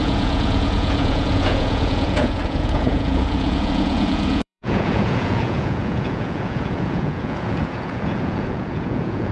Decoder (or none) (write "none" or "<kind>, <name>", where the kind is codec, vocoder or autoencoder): vocoder, Vocos